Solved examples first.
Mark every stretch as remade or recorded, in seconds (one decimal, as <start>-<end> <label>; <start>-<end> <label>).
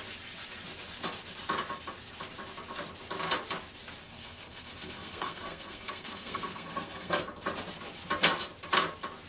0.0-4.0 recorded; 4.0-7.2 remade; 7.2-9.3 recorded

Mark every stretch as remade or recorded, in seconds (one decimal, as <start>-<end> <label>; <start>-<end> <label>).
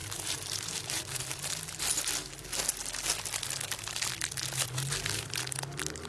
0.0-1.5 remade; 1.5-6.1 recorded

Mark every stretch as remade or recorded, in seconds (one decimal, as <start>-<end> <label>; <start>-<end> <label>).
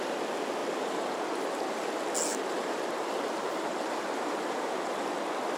0.0-0.6 recorded; 0.6-1.9 remade; 1.9-2.3 recorded; 2.3-4.9 remade; 4.9-5.6 recorded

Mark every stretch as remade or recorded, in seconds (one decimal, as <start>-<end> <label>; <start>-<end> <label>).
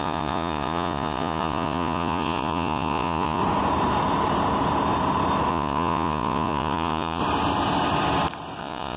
0.0-3.4 remade; 3.4-5.5 recorded; 5.5-7.2 remade; 7.2-8.6 recorded; 8.6-9.0 remade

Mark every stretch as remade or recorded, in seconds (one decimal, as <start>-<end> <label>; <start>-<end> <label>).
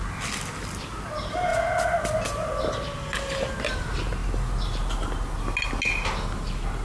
0.0-6.8 recorded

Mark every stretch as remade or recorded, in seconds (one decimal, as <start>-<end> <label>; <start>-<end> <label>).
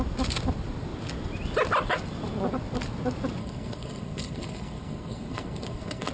0.0-3.4 recorded; 3.4-6.1 remade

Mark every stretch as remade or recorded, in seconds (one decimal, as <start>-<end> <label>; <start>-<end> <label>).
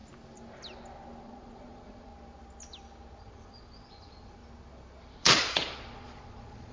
0.0-1.2 recorded; 1.2-2.1 remade; 2.1-3.2 recorded; 3.2-4.4 remade; 4.4-5.1 recorded; 5.1-6.7 remade